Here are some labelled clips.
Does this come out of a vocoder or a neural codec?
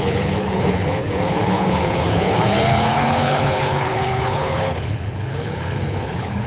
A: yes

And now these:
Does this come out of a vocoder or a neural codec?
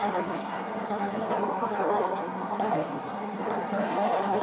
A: yes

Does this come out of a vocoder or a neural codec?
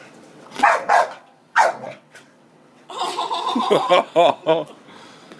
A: yes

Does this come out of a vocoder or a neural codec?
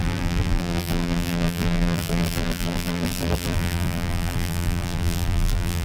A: yes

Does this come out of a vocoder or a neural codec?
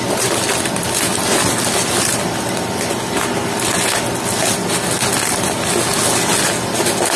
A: no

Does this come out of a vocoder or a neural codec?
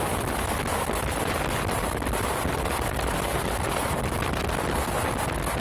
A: no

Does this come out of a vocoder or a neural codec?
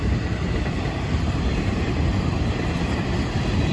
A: yes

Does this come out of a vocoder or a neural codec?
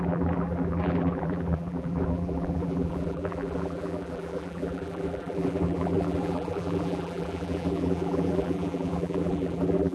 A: yes